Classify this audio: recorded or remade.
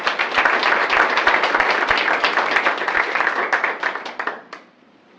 recorded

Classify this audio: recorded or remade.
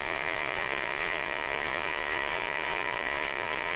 remade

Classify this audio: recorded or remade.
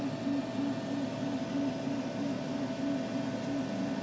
recorded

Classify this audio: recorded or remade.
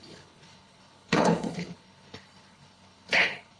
remade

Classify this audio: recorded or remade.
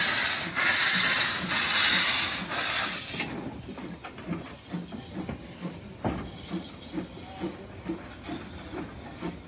recorded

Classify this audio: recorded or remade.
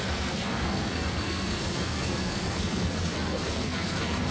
remade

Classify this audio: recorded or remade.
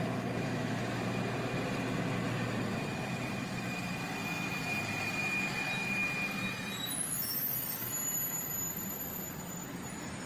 recorded